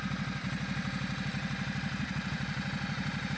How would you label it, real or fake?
real